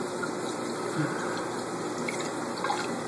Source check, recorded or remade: recorded